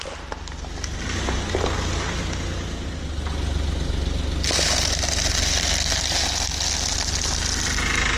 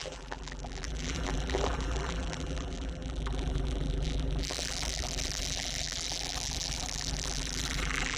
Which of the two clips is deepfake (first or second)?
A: second